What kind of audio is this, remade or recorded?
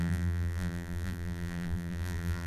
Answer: remade